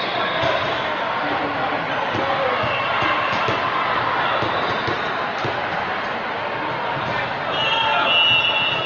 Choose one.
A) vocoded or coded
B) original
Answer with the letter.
B